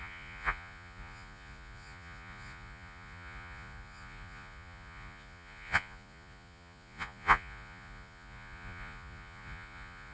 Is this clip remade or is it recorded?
remade